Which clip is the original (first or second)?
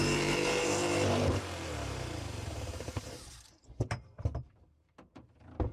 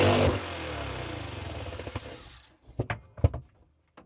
second